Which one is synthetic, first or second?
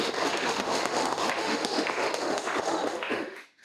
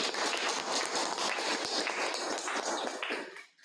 first